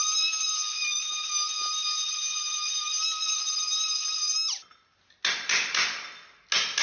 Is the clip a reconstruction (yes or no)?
no